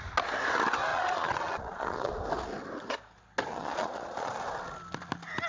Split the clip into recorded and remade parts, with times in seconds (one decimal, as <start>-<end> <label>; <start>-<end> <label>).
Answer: 0.0-0.9 recorded; 0.9-2.1 remade; 2.1-3.5 recorded; 3.5-4.3 remade; 4.3-5.5 recorded